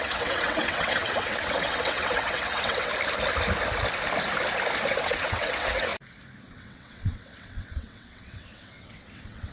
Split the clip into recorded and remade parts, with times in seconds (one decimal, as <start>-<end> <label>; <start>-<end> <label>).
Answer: 0.0-2.9 remade; 2.9-4.9 recorded; 4.9-5.9 remade; 5.9-6.5 recorded; 6.5-9.5 remade